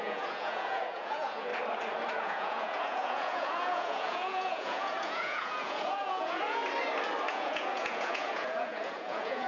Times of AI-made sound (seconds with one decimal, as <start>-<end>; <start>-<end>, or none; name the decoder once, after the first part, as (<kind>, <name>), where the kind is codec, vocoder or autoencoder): 0.0-1.5 (vocoder, Vocos); 2.1-6.6; 7.3-9.5